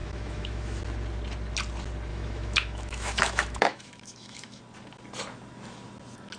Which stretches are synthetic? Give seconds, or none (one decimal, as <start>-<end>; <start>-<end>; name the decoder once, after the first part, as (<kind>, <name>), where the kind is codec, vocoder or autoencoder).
0.0-0.8 (autoencoder, DAC-VAE); 2.1-4.6